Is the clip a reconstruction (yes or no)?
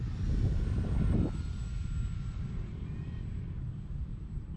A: no